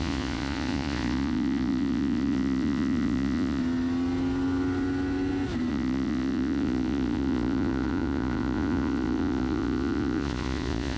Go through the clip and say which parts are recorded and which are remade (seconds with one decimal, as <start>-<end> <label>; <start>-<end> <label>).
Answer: 0.0-3.6 remade; 3.6-5.7 recorded; 5.7-11.0 remade